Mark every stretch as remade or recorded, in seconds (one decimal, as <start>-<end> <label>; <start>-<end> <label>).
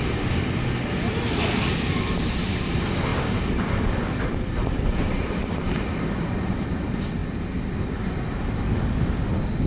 0.0-9.7 recorded